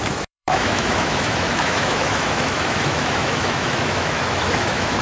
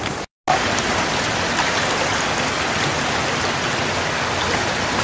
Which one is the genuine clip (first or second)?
second